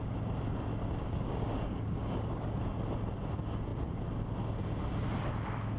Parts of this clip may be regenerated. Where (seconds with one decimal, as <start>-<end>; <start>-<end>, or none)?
0.8-2.6